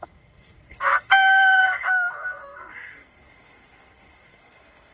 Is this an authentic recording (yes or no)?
no